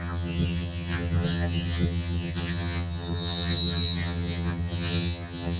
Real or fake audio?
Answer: fake